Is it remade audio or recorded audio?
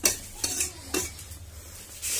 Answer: recorded